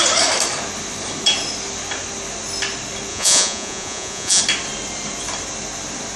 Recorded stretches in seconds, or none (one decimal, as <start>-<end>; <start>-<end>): 0.0-3.1; 4.4-6.2